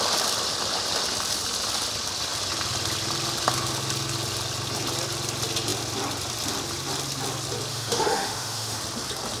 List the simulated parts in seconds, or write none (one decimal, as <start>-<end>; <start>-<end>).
7.7-8.8